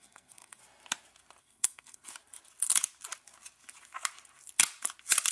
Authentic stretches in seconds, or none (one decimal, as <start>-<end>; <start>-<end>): 0.6-1.4; 2.1-5.3